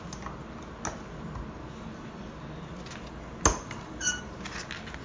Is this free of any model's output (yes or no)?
yes